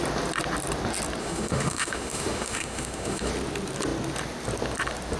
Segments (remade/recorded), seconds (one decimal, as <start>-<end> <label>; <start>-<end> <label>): 0.0-1.2 recorded; 1.2-3.3 remade; 3.3-5.2 recorded